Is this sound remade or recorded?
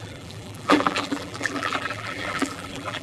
remade